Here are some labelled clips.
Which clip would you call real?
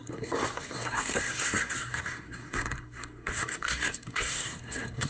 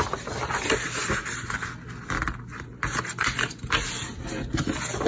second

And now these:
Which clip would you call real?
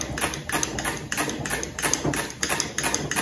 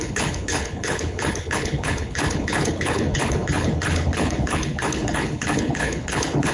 first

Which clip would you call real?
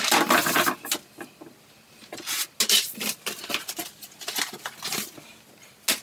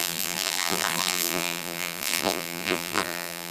first